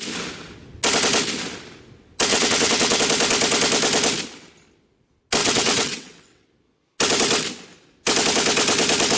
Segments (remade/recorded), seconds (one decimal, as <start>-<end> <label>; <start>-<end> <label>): 0.0-2.3 recorded; 2.3-3.0 remade; 3.0-5.4 recorded; 5.4-6.5 remade; 6.5-9.2 recorded